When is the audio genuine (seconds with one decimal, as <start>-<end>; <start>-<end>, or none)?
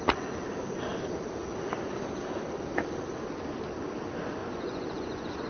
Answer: 0.0-4.4